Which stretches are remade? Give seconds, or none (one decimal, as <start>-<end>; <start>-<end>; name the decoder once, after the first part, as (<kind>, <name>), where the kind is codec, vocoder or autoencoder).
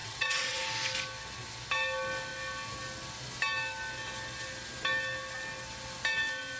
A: 0.0-0.6 (vocoder, WaveNeXt)